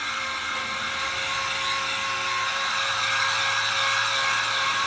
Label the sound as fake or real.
real